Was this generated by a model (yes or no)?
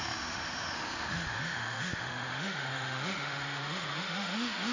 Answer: yes